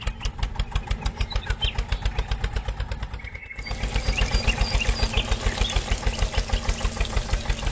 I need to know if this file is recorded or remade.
recorded